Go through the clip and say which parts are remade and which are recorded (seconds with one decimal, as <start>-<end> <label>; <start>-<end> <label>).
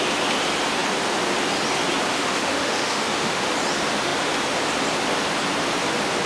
0.0-2.1 recorded; 2.1-3.5 remade; 3.5-6.3 recorded